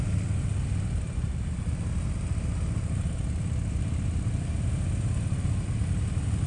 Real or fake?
real